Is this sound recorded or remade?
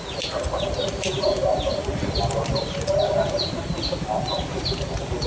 recorded